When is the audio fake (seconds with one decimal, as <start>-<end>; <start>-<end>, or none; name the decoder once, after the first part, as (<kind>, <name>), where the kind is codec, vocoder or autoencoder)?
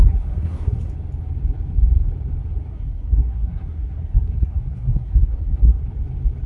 0.0-0.9 (codec, SNAC); 2.7-5.8